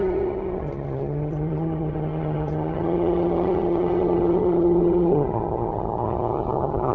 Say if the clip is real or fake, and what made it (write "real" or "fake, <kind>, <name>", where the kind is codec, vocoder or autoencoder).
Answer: fake, vocoder, HiFi-GAN